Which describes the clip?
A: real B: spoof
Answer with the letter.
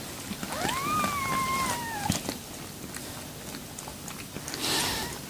A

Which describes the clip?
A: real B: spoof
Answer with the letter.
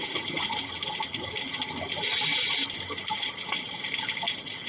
A